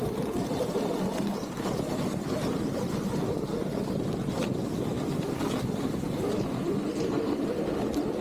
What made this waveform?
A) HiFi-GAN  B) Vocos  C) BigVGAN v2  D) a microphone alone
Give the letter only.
D